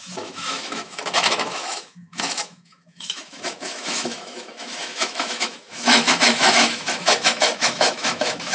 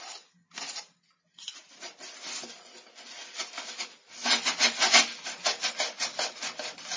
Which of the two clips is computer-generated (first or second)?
first